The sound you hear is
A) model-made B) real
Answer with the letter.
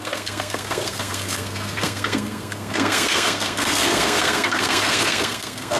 A